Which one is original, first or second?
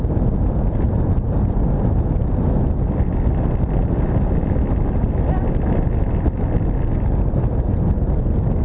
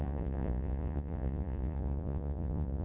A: first